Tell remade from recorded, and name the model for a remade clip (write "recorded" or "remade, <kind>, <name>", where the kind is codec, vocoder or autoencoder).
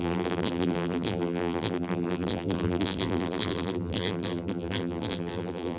remade, vocoder, BigVGAN v2